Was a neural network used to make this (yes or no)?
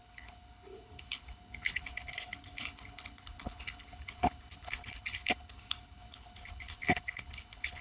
yes